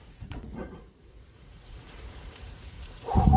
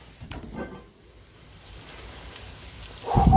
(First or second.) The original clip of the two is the second